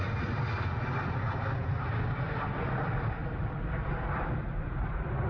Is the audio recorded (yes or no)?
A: yes